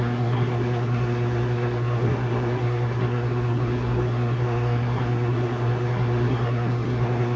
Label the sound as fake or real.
fake